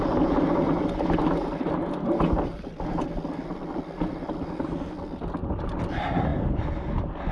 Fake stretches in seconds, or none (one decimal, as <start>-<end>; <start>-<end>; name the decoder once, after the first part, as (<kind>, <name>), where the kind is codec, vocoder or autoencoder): none